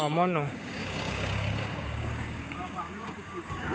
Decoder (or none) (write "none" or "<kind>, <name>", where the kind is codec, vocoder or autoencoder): codec, DAC